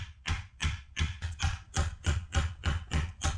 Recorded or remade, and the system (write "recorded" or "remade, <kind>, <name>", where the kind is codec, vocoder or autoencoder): remade, vocoder, Vocos